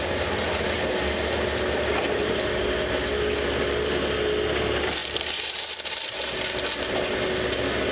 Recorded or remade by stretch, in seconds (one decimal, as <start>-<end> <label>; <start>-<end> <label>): 0.0-7.9 recorded